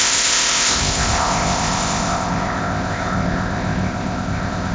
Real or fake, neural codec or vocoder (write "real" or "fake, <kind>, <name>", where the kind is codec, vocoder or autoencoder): fake, codec, ZipCodec